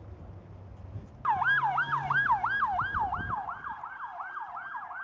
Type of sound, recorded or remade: recorded